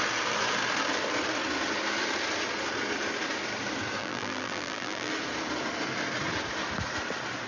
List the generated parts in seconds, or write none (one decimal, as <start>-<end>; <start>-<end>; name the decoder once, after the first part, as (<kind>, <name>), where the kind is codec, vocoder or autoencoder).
4.0-5.1 (vocoder, BigVGAN v2)